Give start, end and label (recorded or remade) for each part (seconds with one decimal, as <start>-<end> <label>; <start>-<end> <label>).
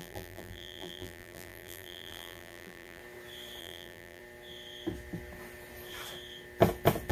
0.0-3.0 remade; 3.0-3.6 recorded; 3.6-4.2 remade; 4.2-7.1 recorded